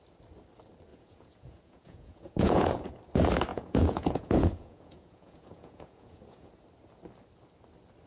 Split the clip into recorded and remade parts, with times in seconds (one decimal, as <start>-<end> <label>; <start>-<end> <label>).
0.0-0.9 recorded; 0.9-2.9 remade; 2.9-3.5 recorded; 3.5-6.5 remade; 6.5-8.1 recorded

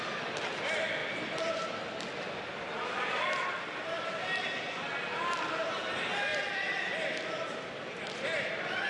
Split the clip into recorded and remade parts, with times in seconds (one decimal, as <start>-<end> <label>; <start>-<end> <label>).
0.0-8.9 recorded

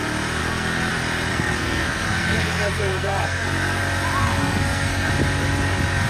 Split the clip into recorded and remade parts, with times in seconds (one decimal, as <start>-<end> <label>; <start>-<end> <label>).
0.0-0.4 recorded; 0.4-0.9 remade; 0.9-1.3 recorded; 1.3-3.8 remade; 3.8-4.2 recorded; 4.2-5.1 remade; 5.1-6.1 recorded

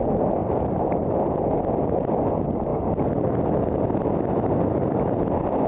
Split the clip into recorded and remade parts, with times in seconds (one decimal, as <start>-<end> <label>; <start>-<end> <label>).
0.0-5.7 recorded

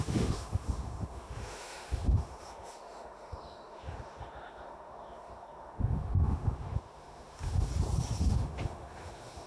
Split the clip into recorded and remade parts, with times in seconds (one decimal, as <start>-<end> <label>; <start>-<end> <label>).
0.0-7.7 remade; 7.7-8.2 recorded; 8.2-9.5 remade

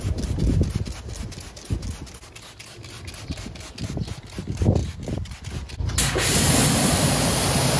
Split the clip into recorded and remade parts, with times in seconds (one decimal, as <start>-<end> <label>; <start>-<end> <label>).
0.0-7.8 recorded